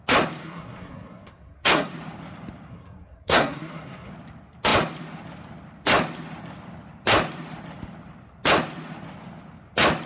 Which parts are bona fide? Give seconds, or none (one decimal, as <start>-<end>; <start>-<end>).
0.0-0.4; 1.9-2.7; 4.1-10.1